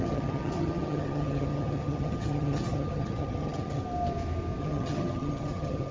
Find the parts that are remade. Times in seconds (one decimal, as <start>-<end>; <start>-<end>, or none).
0.0-3.8; 4.6-5.9

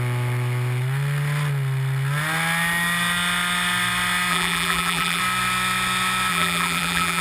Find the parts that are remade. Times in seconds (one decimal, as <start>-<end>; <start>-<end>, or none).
4.3-5.2; 6.3-7.2